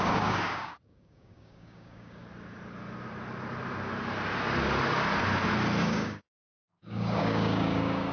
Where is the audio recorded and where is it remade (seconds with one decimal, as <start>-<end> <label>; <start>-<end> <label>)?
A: 0.0-2.2 remade; 2.2-5.8 recorded; 5.8-8.1 remade